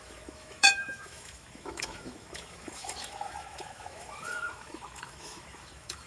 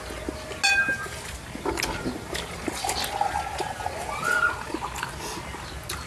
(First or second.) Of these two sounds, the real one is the second